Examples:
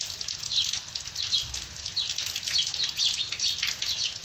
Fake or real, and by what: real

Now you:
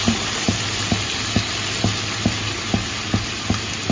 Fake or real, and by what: real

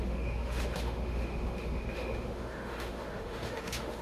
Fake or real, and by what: fake, autoencoder, DAC-VAE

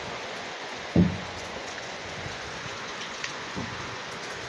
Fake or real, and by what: fake, vocoder, Vocos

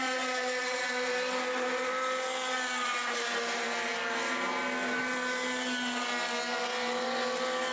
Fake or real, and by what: real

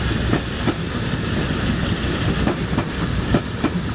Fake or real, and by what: real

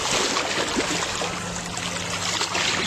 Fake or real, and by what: real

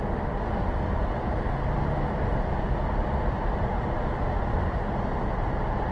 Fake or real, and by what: real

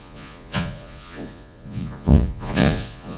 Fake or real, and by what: fake, vocoder, Vocos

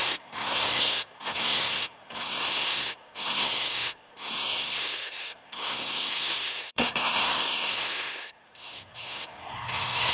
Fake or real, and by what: fake, codec, SNAC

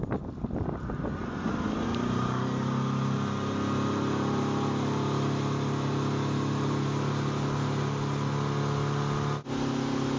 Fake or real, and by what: real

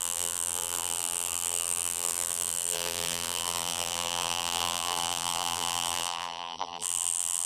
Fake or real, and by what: fake, vocoder, BigVGAN v2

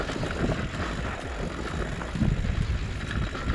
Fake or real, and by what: real